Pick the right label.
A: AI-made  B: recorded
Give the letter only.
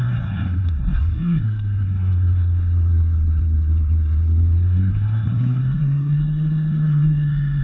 A